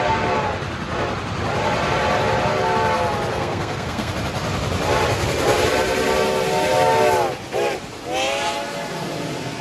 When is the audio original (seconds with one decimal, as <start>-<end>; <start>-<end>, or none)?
0.0-3.3; 4.1-9.6